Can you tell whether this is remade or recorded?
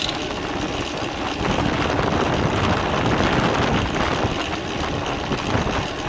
recorded